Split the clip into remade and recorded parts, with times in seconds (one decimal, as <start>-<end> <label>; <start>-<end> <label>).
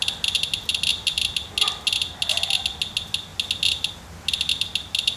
0.0-5.2 recorded